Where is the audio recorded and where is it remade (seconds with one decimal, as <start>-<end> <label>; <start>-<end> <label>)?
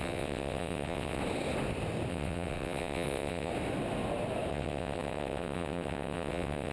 0.0-1.2 remade; 1.2-2.1 recorded; 2.1-3.5 remade; 3.5-4.5 recorded; 4.5-6.7 remade